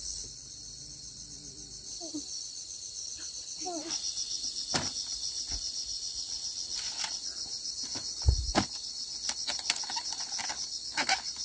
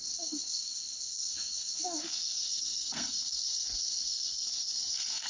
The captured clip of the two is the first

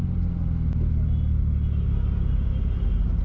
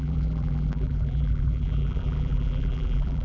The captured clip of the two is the first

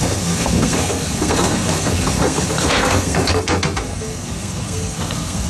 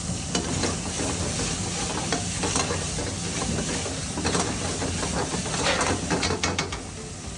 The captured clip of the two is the second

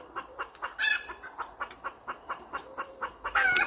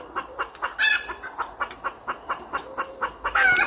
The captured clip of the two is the second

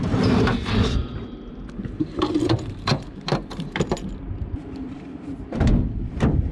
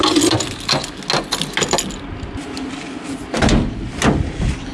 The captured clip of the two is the second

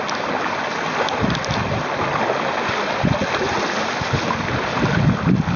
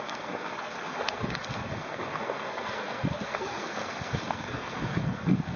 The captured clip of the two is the first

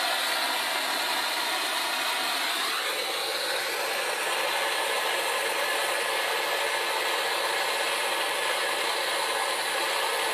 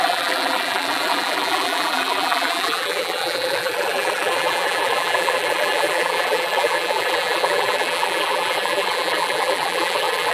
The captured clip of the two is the first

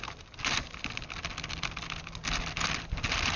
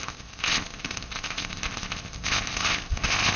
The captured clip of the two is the first